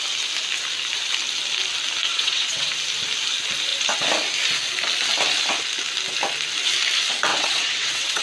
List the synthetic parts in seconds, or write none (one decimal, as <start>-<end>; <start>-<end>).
2.1-2.7; 7.3-8.2

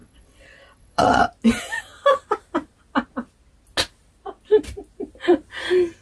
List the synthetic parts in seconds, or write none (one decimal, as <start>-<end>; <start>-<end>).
0.0-1.2

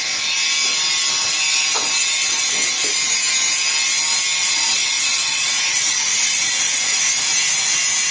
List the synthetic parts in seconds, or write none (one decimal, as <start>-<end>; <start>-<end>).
4.4-7.0

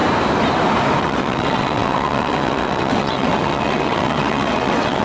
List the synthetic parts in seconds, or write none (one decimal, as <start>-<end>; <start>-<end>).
1.0-5.0

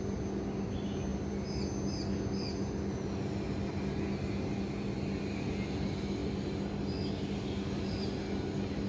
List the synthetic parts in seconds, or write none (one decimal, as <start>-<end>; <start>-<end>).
none

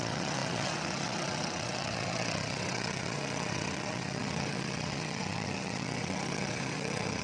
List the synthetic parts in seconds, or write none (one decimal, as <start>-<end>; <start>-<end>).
0.0-7.2